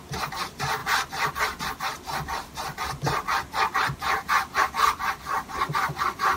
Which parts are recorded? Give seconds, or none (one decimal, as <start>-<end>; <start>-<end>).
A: 0.0-0.8; 1.6-4.6; 5.2-6.4